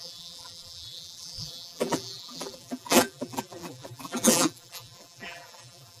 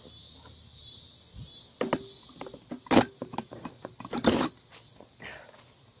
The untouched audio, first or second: second